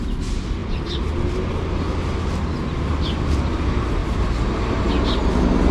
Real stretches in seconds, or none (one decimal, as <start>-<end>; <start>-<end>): 0.0-5.7